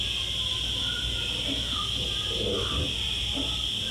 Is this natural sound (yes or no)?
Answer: yes